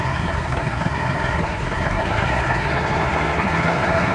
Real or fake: fake